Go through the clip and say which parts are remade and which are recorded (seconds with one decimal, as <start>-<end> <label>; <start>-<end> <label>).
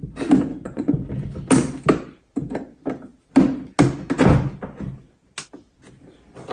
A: 0.0-0.5 recorded; 0.5-1.1 remade; 1.1-6.5 recorded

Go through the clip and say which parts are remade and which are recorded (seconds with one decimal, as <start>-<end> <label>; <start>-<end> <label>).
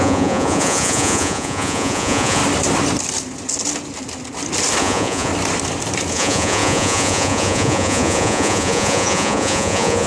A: 0.0-2.4 remade; 2.4-4.8 recorded; 4.8-5.3 remade; 5.3-6.1 recorded; 6.1-10.1 remade